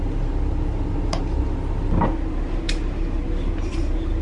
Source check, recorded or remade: recorded